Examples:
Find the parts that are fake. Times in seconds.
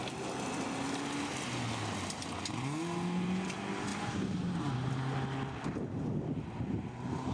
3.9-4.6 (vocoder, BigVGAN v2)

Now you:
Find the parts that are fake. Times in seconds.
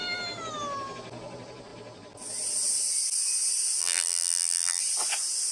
3.8-4.8 (vocoder, BigVGAN v2)